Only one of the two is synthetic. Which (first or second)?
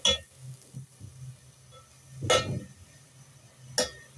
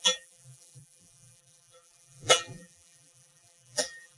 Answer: second